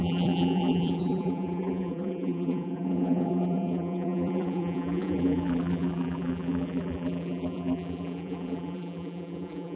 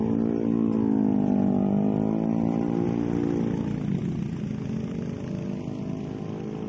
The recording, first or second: second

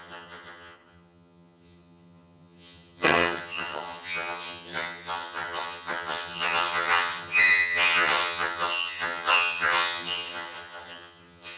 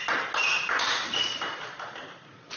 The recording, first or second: second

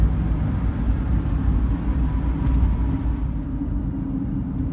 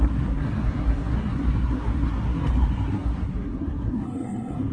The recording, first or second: first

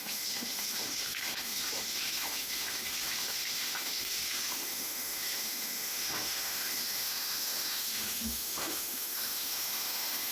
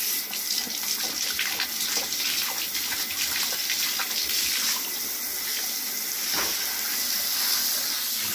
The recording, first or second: second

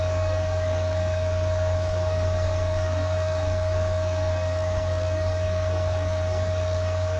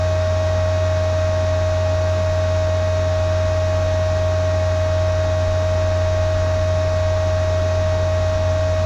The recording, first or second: second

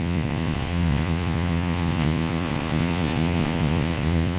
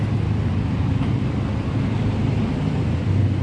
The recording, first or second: second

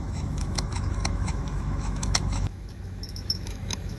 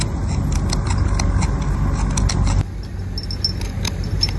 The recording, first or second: second